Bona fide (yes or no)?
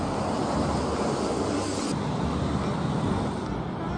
yes